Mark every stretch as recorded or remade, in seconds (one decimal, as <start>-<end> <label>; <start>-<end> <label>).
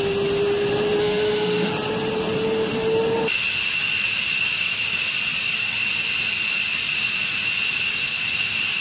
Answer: 0.0-1.0 recorded; 1.0-1.7 remade; 1.7-8.8 recorded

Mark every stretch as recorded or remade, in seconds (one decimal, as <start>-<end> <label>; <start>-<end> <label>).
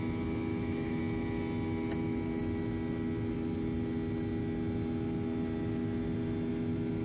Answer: 0.0-0.5 recorded; 0.5-1.0 remade; 1.0-7.0 recorded